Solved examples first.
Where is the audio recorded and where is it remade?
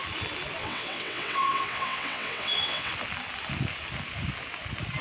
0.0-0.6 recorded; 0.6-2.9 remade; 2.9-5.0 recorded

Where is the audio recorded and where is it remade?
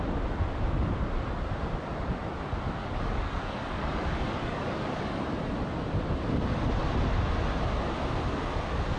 0.0-2.8 recorded; 2.8-5.2 remade; 5.2-9.0 recorded